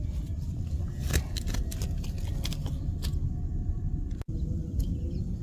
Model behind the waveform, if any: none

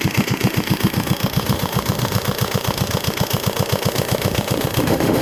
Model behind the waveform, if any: autoencoder, DAC-VAE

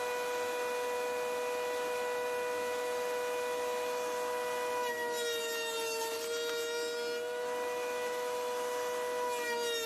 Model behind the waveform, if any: none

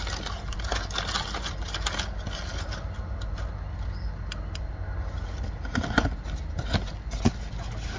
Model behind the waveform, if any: none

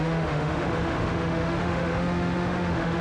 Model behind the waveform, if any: autoencoder, DAC-VAE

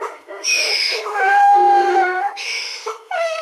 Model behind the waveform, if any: autoencoder, DAC-VAE